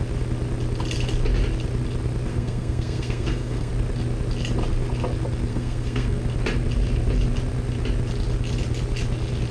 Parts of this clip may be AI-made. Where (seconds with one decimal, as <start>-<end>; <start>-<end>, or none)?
2.3-3.7; 5.5-6.2